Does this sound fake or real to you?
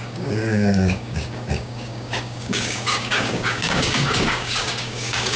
fake